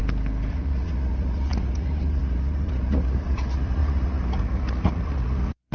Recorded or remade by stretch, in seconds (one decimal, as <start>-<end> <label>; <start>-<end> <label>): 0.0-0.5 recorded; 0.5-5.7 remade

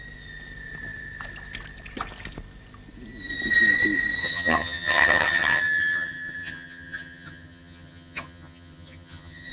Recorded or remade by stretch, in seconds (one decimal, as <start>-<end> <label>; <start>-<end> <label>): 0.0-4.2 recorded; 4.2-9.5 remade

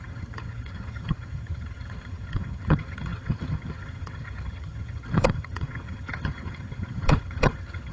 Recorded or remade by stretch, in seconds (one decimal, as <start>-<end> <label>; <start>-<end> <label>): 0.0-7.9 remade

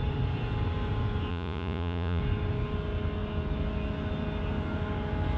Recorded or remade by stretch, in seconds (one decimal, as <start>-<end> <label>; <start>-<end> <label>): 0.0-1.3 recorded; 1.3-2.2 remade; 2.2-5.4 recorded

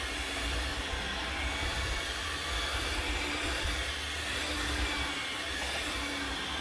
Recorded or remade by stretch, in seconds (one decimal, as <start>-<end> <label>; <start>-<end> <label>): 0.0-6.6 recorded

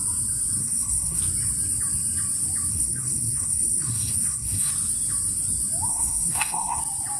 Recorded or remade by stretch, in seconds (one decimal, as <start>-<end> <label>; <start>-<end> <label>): 0.0-0.6 recorded; 0.6-1.2 remade; 1.2-2.7 recorded; 2.7-4.7 remade; 4.7-5.9 recorded; 5.9-6.8 remade; 6.8-7.2 recorded

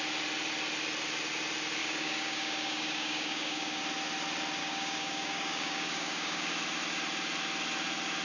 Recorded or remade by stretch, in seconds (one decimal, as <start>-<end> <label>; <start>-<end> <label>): 0.0-1.8 recorded; 1.8-3.8 remade; 3.8-4.6 recorded; 4.6-6.5 remade; 6.5-8.2 recorded

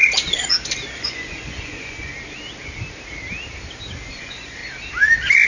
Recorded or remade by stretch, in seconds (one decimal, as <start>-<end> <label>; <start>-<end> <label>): 0.0-1.0 recorded; 1.0-2.1 remade; 2.1-4.1 recorded; 4.1-4.6 remade; 4.6-5.5 recorded